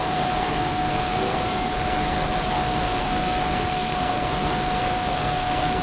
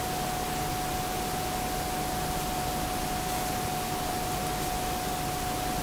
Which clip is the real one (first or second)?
second